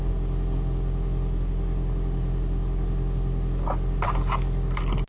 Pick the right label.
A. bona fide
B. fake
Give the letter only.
A